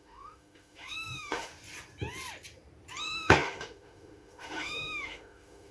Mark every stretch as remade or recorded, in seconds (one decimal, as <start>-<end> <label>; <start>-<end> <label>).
0.0-1.5 remade; 1.5-3.0 recorded; 3.0-5.7 remade